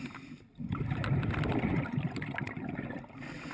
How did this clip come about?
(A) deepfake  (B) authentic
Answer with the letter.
B